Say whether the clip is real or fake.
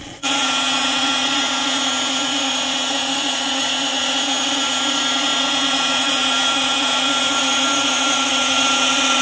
fake